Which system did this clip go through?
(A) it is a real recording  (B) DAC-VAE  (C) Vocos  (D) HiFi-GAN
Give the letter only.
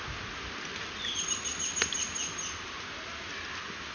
A